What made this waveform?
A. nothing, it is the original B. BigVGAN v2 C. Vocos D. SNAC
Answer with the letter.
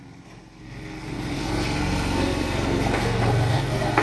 D